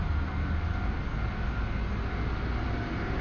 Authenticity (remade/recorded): recorded